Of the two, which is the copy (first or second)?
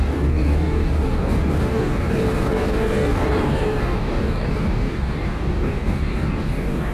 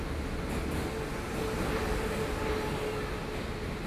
first